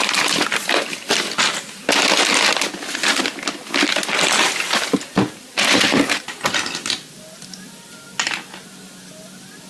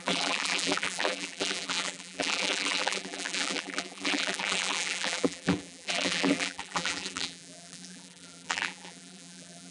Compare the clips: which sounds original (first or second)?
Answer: first